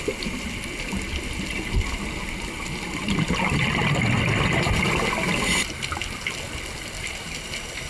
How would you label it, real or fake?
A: real